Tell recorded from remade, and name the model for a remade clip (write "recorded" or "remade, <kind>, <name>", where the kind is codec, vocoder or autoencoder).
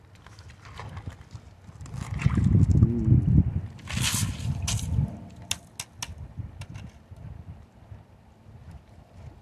recorded